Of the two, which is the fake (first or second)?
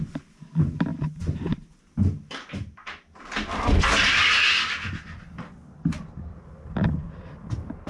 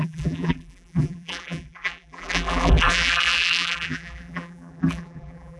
second